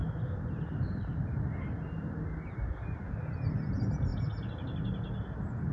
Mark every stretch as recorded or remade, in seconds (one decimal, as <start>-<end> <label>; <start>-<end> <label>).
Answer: 0.0-5.7 recorded